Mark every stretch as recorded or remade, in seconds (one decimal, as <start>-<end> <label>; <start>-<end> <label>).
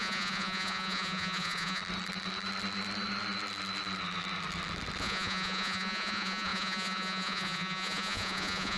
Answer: 0.0-1.8 remade; 1.8-5.0 recorded; 5.0-8.8 remade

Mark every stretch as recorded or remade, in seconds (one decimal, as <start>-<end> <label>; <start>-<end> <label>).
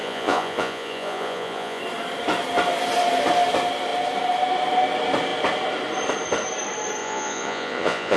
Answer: 0.0-1.8 remade; 1.8-7.0 recorded; 7.0-8.2 remade